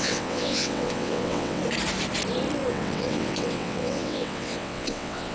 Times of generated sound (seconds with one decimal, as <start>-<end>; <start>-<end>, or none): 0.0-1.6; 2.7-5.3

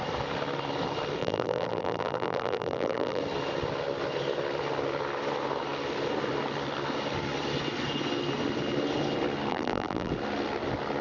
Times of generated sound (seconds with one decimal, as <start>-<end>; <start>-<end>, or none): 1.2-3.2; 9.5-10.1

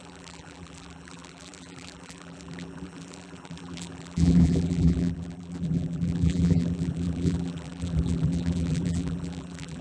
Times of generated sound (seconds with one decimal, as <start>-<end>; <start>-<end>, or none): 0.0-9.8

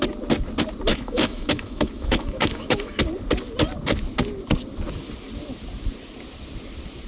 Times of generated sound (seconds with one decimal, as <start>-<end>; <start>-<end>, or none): 0.9-3.0